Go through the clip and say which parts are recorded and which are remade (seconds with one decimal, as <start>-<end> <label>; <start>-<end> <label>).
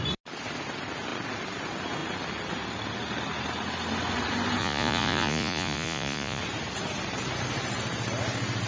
0.0-4.6 recorded; 4.6-6.4 remade; 6.4-8.7 recorded